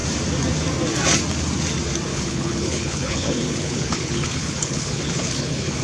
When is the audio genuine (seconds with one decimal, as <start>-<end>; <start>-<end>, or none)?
0.0-2.1